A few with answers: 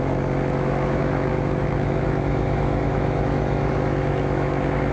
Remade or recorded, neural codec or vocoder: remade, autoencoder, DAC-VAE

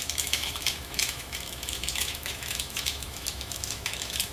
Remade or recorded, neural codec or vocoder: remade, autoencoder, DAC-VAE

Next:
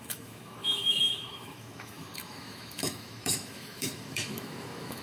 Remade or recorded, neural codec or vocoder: remade, autoencoder, DAC-VAE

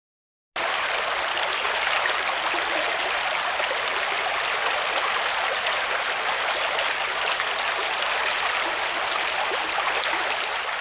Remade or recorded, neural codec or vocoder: recorded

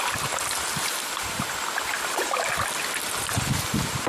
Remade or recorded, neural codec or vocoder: recorded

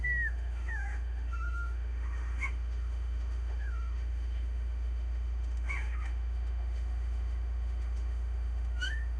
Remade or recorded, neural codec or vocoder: remade, autoencoder, DAC-VAE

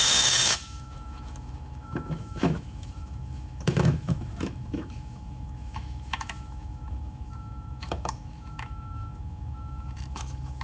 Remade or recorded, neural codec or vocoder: remade, autoencoder, DAC-VAE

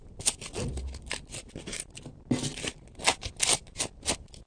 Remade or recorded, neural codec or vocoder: recorded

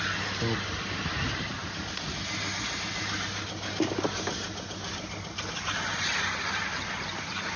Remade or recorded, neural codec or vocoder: recorded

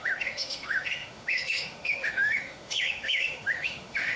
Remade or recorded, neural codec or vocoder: remade, autoencoder, DAC-VAE